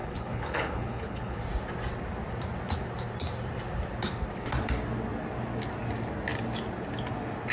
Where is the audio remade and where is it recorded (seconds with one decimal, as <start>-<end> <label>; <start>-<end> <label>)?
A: 0.0-1.4 remade; 1.4-7.5 recorded